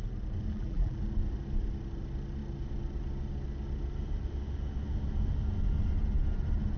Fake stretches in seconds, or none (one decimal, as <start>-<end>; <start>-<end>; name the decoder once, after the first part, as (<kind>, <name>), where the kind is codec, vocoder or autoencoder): 0.5-1.0 (vocoder, BigVGAN v2)